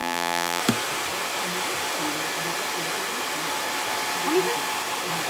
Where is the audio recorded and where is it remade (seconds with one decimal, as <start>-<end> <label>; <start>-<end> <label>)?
0.0-0.6 remade; 0.6-5.3 recorded